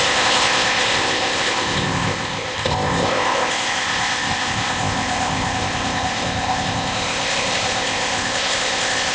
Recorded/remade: remade